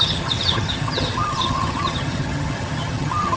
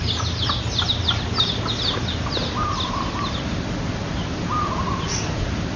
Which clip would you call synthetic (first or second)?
first